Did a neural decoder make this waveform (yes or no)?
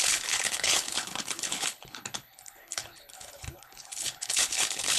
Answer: yes